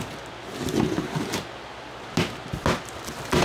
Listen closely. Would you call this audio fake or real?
real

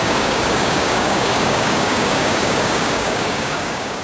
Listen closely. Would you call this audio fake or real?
fake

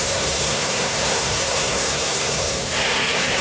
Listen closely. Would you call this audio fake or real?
fake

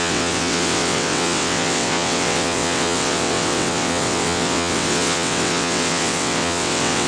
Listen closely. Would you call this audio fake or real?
fake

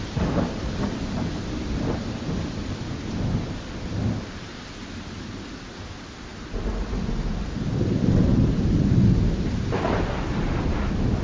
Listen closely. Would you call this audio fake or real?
real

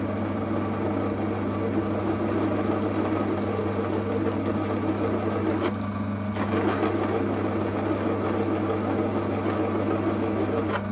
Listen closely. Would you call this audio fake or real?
real